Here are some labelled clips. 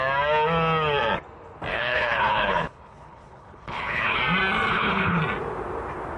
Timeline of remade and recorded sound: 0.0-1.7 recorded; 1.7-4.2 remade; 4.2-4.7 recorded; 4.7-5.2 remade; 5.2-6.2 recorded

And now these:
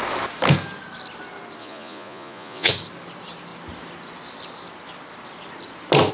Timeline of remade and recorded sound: 0.0-1.6 recorded; 1.6-2.7 remade; 2.7-6.1 recorded

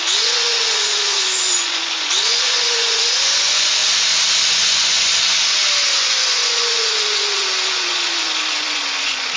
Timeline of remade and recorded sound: 0.0-3.8 remade; 3.8-4.5 recorded; 4.5-5.1 remade; 5.1-5.9 recorded; 5.9-9.4 remade

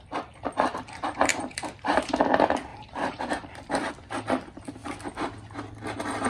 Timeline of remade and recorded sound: 0.0-1.3 recorded; 1.3-2.1 remade; 2.1-2.7 recorded; 2.7-3.9 remade; 3.9-6.3 recorded

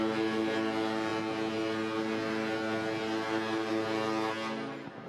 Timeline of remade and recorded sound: 0.0-5.1 recorded